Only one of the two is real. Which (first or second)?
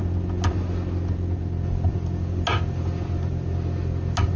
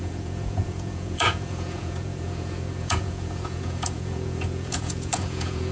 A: first